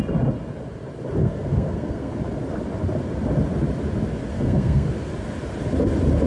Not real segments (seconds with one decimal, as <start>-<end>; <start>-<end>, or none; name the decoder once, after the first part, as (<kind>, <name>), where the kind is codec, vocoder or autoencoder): 1.2-2.1 (codec, SNAC); 4.3-4.9